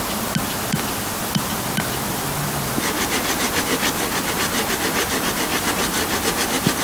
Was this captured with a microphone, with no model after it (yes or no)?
yes